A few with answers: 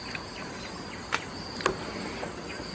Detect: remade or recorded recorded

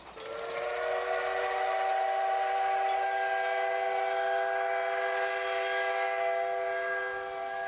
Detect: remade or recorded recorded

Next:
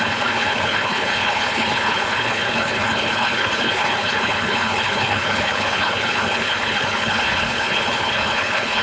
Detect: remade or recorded remade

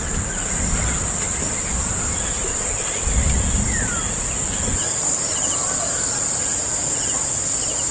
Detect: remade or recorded recorded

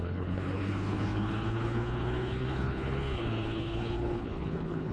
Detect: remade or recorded remade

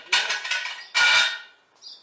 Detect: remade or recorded recorded